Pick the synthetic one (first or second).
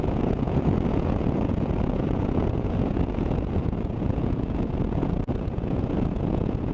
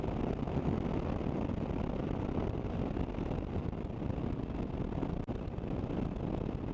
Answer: first